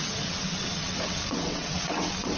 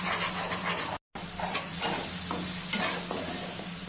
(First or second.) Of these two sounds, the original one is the second